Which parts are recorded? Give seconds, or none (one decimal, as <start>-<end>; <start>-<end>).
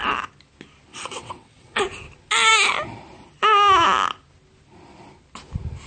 0.0-0.9; 1.8-5.9